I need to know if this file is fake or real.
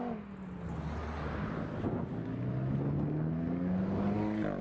real